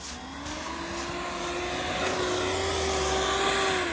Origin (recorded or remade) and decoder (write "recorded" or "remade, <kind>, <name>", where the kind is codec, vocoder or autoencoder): recorded